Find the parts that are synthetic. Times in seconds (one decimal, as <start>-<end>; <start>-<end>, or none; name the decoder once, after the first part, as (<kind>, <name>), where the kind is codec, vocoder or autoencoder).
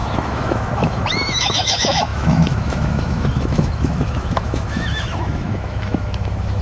0.0-6.6 (autoencoder, DAC-VAE)